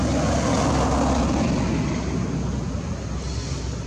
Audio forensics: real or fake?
real